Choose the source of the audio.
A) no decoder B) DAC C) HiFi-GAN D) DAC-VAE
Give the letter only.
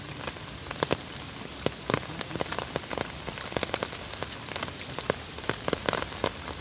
A